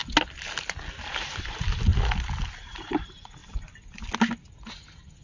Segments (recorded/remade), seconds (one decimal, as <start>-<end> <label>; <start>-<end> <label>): 0.0-1.0 recorded; 1.0-1.9 remade; 1.9-2.5 recorded; 2.5-3.4 remade; 3.4-4.7 recorded; 4.7-5.2 remade